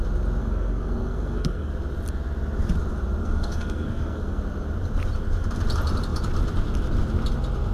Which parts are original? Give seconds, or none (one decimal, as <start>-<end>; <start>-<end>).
0.0-0.4; 1.7-3.2; 4.4-7.7